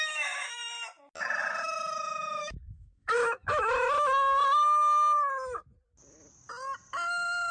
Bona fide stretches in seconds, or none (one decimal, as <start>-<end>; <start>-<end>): 0.6-1.6; 5.6-7.5